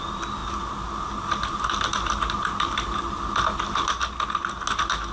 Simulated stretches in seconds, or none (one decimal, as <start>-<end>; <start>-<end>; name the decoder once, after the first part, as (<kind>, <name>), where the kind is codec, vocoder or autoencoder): none